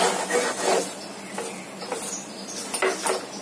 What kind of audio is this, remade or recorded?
recorded